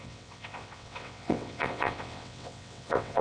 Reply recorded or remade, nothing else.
remade